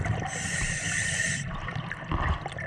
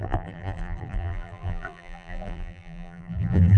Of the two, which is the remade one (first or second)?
second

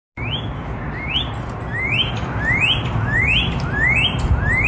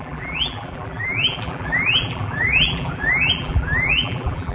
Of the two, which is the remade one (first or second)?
second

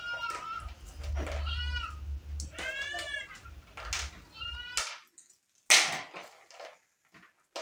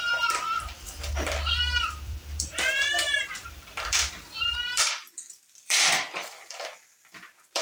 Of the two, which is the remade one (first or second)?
second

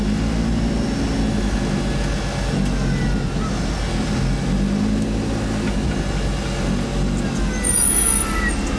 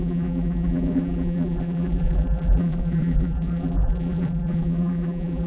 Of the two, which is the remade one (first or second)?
second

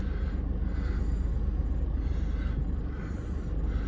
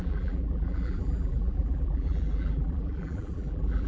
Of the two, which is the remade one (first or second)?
second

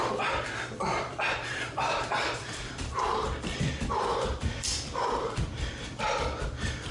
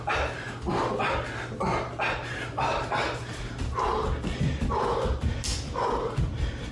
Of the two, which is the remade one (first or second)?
first